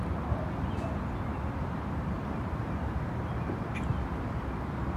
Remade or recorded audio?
remade